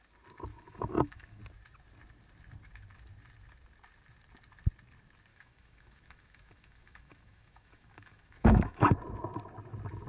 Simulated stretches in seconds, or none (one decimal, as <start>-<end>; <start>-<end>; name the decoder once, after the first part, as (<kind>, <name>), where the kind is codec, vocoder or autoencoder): 0.5-1.4 (autoencoder, DAC-VAE); 5.3-8.8